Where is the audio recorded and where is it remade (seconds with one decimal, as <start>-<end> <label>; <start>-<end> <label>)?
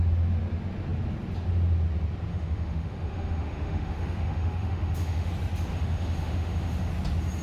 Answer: 0.0-2.3 recorded; 2.3-5.3 remade; 5.3-5.7 recorded; 5.7-6.9 remade; 6.9-7.4 recorded